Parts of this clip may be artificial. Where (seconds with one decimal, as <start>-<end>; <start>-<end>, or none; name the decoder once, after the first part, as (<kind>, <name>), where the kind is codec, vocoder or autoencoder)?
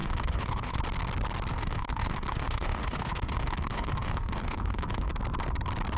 0.0-0.8 (autoencoder, DAC-VAE); 1.5-5.1